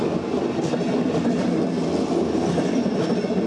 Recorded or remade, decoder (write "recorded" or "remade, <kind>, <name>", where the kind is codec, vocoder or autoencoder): recorded